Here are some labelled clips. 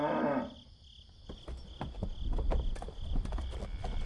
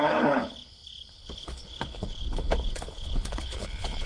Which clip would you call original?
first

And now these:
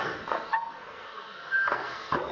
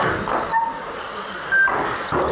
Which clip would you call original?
second